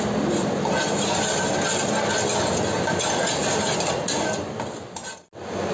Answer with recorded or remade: recorded